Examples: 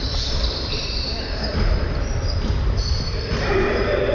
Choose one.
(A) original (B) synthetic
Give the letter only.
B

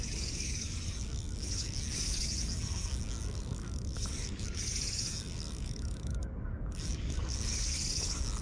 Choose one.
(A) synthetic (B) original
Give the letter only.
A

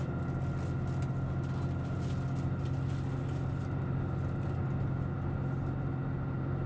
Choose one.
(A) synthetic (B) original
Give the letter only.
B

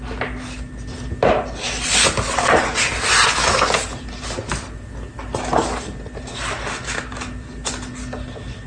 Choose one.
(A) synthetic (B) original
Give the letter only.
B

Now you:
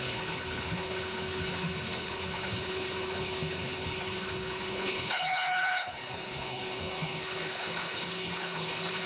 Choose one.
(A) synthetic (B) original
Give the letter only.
A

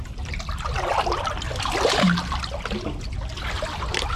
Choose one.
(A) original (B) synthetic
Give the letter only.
A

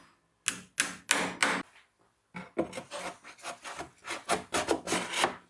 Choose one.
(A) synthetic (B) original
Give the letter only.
B